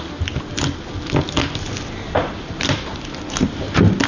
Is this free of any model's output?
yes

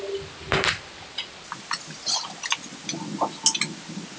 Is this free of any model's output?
yes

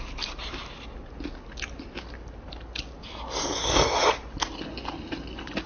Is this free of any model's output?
yes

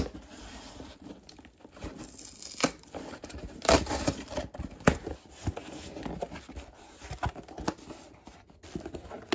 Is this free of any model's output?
yes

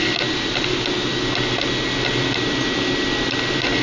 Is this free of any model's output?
yes